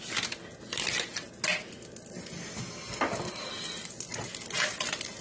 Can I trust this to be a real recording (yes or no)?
yes